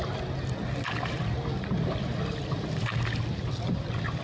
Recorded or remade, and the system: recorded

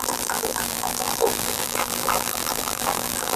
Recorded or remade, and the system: remade, vocoder, BigVGAN v2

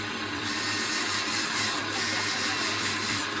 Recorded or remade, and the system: remade, vocoder, BigVGAN v2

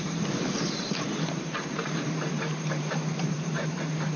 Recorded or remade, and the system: remade, vocoder, BigVGAN v2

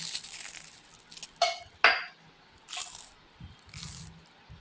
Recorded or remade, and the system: recorded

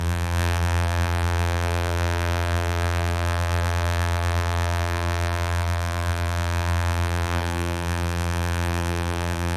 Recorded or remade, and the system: remade, vocoder, BigVGAN v2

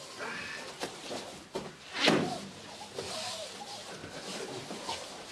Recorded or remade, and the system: recorded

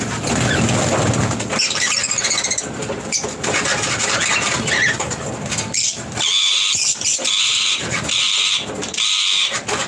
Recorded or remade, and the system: recorded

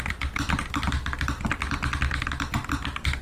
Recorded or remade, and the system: recorded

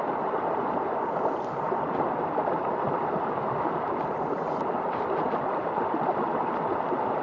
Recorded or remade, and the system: recorded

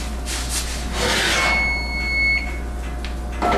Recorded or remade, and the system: recorded